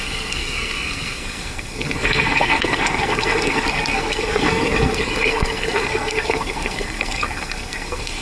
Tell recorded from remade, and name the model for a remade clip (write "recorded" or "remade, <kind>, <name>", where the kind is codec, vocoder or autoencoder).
remade, codec, SNAC